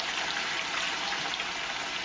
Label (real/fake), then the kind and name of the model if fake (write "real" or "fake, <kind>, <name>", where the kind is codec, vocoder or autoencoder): real